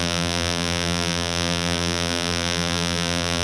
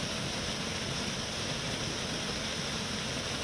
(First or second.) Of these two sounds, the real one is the second